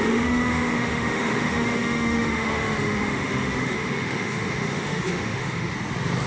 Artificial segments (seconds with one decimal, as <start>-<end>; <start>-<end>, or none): 0.0-5.7